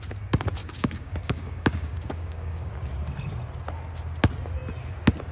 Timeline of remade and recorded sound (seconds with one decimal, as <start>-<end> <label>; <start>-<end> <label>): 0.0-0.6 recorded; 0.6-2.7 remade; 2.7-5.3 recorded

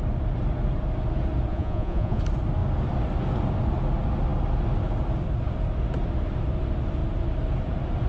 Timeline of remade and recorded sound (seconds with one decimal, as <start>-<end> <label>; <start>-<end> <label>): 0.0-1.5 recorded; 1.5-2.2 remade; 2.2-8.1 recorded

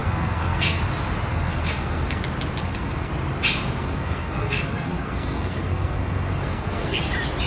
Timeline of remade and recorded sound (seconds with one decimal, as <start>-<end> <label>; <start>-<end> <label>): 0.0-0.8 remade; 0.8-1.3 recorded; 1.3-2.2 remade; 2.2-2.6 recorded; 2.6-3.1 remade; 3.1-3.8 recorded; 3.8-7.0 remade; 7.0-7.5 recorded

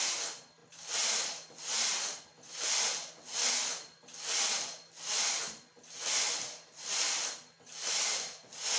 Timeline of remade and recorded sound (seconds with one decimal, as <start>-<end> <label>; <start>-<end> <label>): 0.0-8.8 recorded

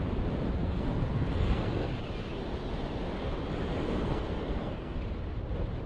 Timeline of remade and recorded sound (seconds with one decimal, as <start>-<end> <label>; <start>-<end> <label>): 0.0-0.6 recorded; 0.6-1.9 remade; 1.9-3.7 recorded; 3.7-5.0 remade; 5.0-5.9 recorded

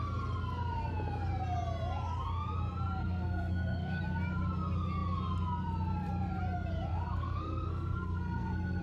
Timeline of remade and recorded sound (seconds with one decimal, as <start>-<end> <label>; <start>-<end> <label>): 0.0-3.0 recorded; 3.0-4.0 remade; 4.0-6.9 recorded; 6.9-8.8 remade